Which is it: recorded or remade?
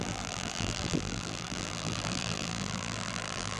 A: remade